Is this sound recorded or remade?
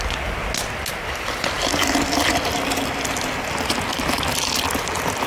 recorded